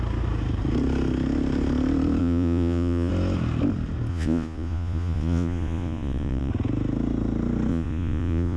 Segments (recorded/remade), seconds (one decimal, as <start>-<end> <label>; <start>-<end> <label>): 0.0-2.2 recorded; 2.2-3.1 remade; 3.1-4.1 recorded; 4.1-6.5 remade; 6.5-7.7 recorded; 7.7-8.6 remade

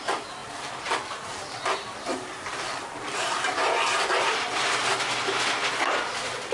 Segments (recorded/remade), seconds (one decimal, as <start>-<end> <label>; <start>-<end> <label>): 0.0-0.4 recorded; 0.4-4.3 remade; 4.3-6.5 recorded